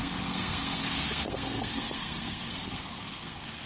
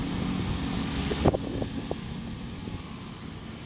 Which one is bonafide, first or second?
second